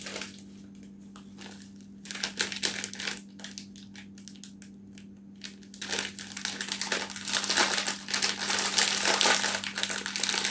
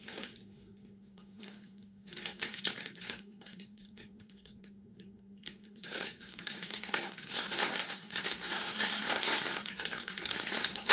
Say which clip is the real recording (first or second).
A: first